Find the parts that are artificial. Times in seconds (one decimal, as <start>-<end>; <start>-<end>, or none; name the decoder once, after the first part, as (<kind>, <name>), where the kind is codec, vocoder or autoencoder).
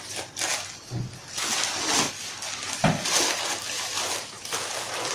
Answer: 4.2-5.1 (vocoder, BigVGAN v2)